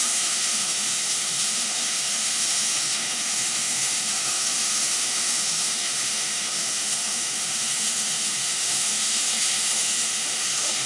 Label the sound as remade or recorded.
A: remade